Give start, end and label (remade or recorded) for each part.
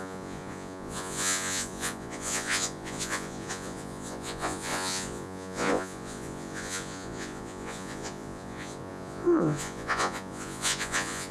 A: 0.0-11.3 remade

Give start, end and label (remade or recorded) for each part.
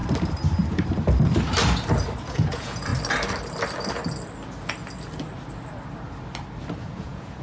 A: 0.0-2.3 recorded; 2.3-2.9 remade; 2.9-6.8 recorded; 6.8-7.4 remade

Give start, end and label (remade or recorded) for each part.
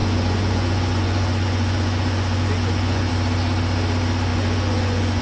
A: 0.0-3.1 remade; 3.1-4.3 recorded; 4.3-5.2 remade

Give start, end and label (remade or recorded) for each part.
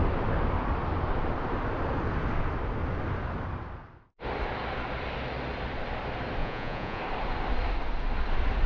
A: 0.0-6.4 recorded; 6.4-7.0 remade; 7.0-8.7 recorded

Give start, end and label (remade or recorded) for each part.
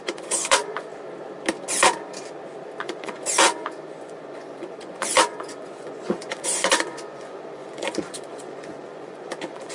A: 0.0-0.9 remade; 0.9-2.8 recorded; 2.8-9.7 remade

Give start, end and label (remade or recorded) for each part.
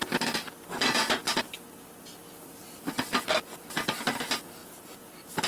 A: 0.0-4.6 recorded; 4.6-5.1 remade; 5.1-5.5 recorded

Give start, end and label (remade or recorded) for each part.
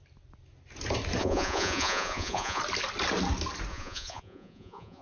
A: 0.0-1.2 recorded; 1.2-2.6 remade; 2.6-3.7 recorded; 3.7-5.0 remade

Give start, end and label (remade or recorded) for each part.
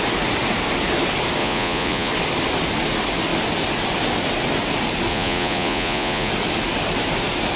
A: 0.0-1.4 recorded; 1.4-2.1 remade; 2.1-5.1 recorded; 5.1-6.3 remade; 6.3-7.6 recorded